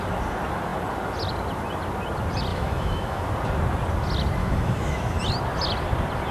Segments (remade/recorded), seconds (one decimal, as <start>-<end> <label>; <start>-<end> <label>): 0.0-2.5 recorded; 2.5-3.3 remade; 3.3-4.4 recorded; 4.4-5.2 remade; 5.2-6.3 recorded